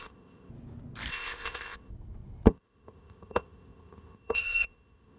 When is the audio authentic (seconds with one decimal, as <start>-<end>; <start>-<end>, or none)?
0.5-1.1; 1.9-2.5